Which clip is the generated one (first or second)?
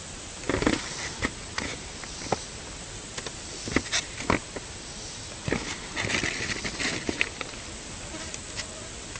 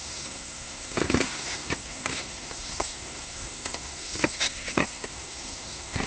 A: second